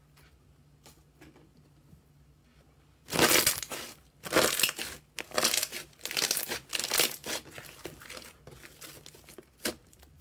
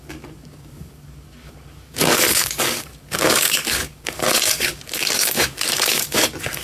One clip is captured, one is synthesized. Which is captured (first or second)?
first